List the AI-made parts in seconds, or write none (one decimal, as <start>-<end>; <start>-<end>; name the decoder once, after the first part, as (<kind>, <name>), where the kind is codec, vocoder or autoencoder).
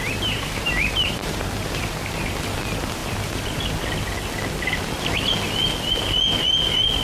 0.0-2.2 (vocoder, BigVGAN v2)